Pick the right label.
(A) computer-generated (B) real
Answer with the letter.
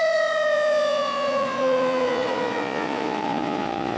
A